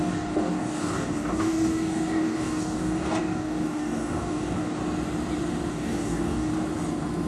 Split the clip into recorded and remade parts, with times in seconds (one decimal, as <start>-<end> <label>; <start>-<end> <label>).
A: 0.0-4.8 remade; 4.8-5.7 recorded; 5.7-6.5 remade; 6.5-7.3 recorded